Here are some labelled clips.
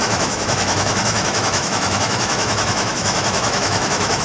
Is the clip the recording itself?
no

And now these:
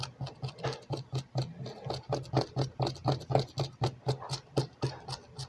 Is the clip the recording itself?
yes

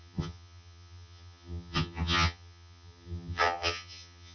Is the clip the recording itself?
no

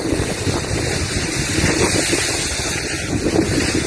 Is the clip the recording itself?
yes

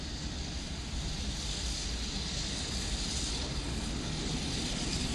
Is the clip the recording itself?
yes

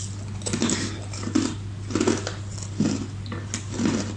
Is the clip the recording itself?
yes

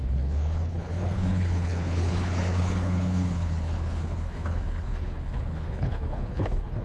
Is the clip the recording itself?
no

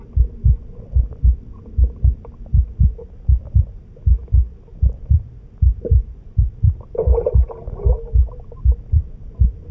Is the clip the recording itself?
yes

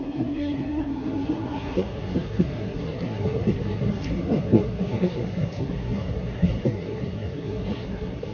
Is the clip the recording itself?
no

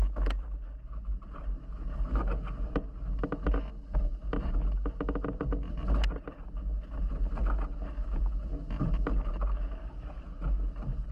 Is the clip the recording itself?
yes